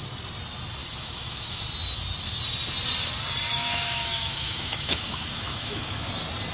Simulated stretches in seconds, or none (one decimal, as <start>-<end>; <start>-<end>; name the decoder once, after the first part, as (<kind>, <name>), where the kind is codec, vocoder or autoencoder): 0.8-1.6 (autoencoder, DAC-VAE); 3.5-6.1